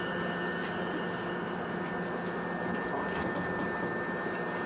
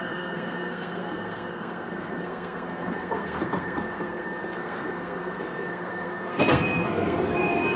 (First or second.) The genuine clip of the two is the first